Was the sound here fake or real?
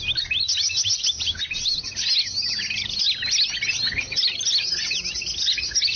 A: real